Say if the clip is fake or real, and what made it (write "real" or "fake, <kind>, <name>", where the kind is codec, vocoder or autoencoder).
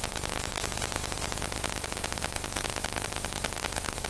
fake, vocoder, BigVGAN v2